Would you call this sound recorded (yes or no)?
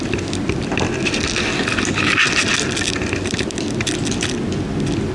yes